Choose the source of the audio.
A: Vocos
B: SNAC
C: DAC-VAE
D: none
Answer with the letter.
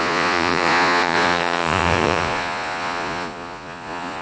A